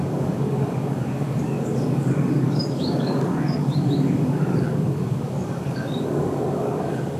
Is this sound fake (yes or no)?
yes